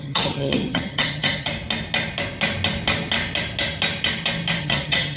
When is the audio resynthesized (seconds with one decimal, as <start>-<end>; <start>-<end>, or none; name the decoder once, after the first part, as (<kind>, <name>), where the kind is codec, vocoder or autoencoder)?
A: 0.0-1.5 (vocoder, HiFi-GAN); 4.6-5.2